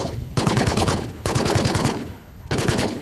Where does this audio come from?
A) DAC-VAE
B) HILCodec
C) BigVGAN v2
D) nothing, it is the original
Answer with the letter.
B